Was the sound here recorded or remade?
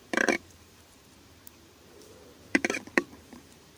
remade